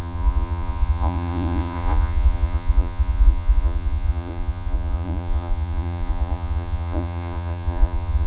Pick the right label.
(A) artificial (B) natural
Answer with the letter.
A